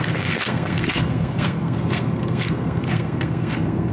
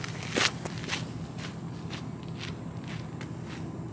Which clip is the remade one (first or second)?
first